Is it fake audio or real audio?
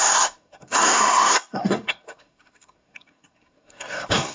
fake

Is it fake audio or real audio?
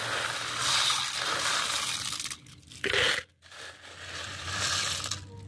real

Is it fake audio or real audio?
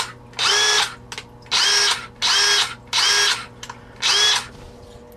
real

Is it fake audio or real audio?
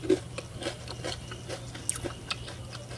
real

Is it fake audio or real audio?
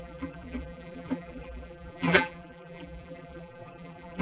fake